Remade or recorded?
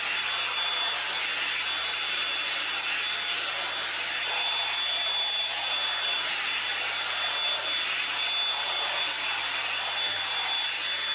recorded